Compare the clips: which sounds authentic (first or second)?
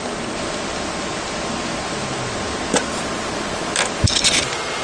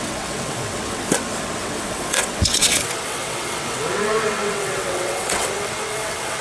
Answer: first